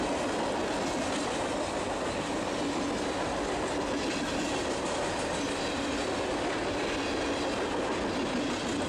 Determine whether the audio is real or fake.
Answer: real